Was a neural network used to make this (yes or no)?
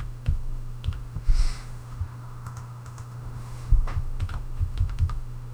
yes